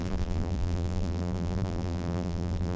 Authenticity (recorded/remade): remade